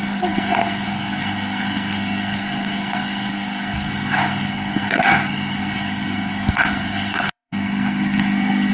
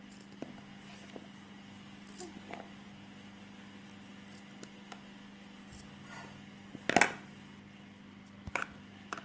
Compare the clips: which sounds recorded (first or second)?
second